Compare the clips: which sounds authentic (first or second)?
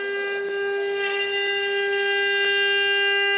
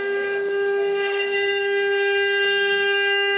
first